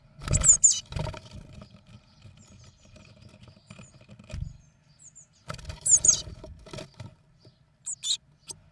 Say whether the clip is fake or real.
real